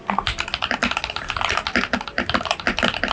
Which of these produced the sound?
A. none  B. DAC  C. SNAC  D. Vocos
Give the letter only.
A